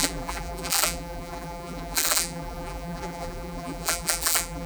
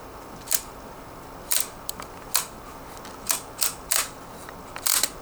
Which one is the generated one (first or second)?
first